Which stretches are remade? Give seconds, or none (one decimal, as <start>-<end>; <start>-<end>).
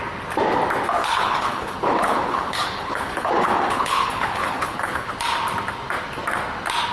1.0-5.1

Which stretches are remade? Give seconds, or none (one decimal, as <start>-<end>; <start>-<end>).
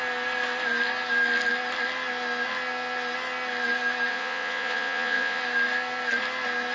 4.1-5.4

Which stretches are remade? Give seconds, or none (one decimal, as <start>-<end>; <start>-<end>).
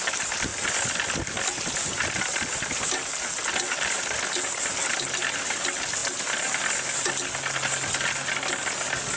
none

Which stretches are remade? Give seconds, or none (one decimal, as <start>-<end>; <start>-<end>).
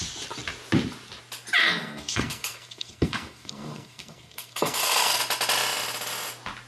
1.6-5.2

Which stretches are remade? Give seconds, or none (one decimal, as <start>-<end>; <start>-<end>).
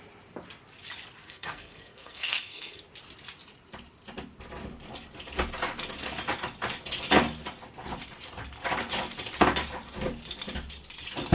1.2-2.8